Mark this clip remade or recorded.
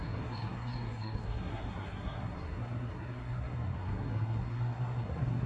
remade